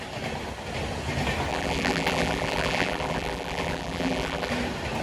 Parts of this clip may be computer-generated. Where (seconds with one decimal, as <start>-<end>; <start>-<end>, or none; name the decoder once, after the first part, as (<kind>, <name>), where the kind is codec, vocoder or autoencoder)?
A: 1.5-4.5 (vocoder, BigVGAN v2)